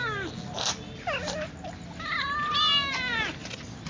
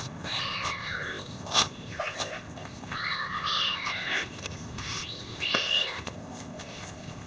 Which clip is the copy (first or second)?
second